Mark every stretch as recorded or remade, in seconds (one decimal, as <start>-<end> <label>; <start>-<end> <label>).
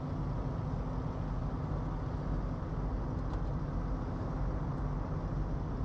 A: 0.0-5.8 recorded